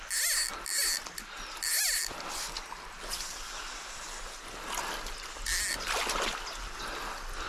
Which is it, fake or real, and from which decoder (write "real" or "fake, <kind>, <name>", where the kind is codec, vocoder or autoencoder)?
real